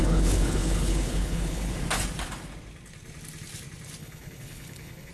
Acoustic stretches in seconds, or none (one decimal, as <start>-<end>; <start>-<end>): 1.7-4.0